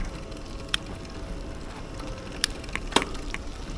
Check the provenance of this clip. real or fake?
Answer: real